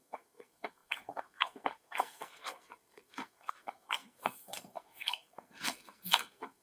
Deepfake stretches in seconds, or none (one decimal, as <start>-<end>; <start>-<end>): 0.0-6.6